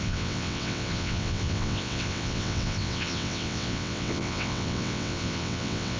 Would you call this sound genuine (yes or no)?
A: no